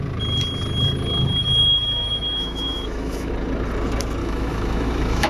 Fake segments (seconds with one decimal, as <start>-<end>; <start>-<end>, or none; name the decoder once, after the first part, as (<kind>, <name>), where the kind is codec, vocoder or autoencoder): 1.4-3.3 (autoencoder, DAC-VAE); 4.2-5.3